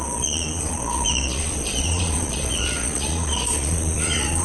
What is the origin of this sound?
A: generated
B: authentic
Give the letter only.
A